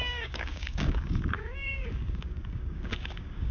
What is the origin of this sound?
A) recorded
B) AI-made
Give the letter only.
B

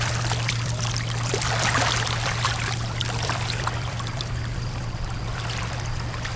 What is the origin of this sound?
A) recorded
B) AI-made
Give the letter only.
B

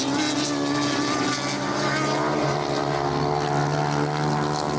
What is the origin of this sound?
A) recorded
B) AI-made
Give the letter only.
A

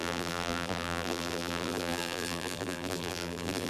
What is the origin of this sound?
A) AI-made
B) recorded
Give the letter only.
A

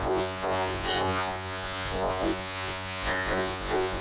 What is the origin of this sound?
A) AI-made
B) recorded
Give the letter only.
A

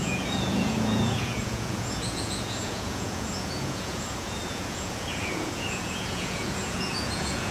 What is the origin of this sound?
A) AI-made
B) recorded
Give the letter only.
A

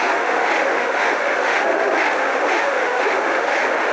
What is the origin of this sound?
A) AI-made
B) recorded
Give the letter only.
A